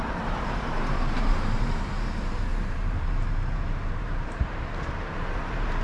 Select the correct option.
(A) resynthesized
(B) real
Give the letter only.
A